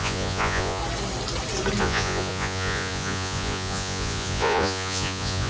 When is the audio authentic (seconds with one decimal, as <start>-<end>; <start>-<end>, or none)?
0.8-1.8